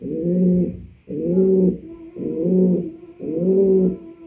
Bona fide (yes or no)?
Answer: yes